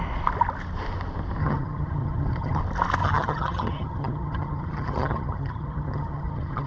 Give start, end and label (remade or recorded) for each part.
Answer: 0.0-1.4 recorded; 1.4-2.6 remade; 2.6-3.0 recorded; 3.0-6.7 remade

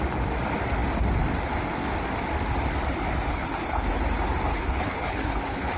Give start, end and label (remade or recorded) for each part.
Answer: 0.0-3.3 recorded; 3.3-3.9 remade; 3.9-4.5 recorded; 4.5-5.8 remade

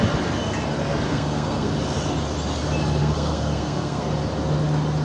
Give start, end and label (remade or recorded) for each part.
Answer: 0.0-1.1 recorded; 1.1-1.7 remade; 1.7-3.0 recorded; 3.0-4.1 remade; 4.1-5.0 recorded

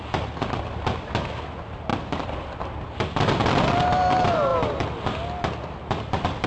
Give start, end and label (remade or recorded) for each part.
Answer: 0.0-6.5 recorded